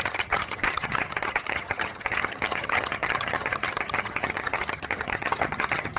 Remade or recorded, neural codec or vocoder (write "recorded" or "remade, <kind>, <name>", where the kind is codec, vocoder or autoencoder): remade, vocoder, HiFi-GAN